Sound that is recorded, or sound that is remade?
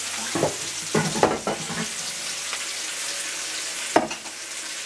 recorded